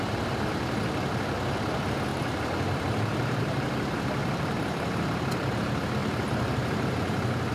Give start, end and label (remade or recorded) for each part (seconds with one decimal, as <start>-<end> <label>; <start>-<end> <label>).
0.0-2.1 recorded; 2.1-5.4 remade; 5.4-6.0 recorded; 6.0-7.5 remade